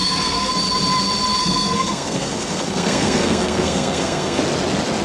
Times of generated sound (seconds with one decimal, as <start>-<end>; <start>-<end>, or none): 0.0-0.5; 1.4-4.4